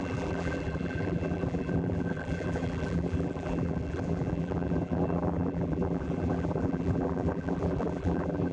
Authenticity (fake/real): fake